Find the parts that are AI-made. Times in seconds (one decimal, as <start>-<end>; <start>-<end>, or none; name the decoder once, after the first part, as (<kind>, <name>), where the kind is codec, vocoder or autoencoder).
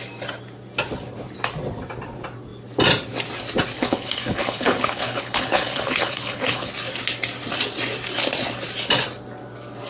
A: 3.8-6.7 (codec, HILCodec)